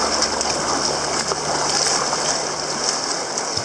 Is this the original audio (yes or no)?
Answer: yes